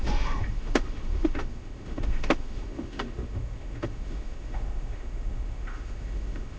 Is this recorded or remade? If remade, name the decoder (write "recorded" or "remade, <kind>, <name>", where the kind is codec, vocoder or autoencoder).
remade, autoencoder, DAC-VAE